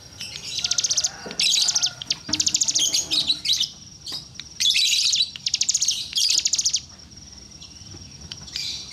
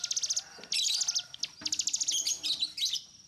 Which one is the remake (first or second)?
first